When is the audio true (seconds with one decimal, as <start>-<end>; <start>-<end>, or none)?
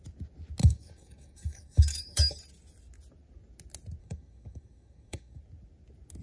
0.0-0.6; 2.4-4.0; 5.4-6.2